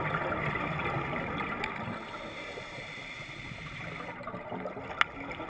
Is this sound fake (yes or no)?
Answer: no